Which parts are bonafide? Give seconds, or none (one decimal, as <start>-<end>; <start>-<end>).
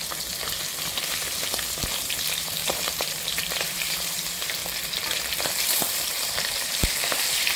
0.0-1.8; 4.6-5.9